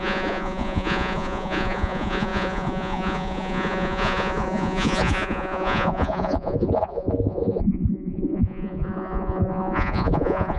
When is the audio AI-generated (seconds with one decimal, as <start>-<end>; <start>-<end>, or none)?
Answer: 0.0-10.6